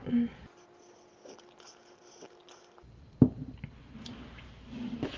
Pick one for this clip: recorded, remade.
recorded